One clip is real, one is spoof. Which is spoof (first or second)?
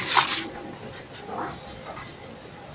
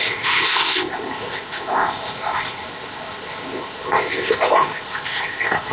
second